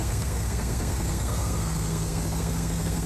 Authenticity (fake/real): fake